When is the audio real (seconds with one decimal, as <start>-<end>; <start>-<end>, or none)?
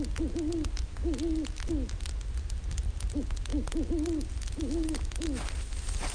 0.0-6.1